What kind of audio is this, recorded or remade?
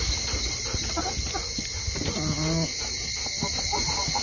recorded